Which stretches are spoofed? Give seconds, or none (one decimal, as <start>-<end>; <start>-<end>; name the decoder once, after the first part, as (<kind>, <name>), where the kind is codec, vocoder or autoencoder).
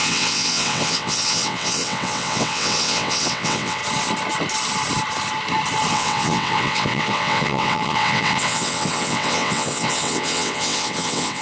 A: 0.0-3.8 (vocoder, WaveNeXt); 5.9-11.4